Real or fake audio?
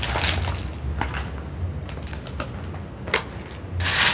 real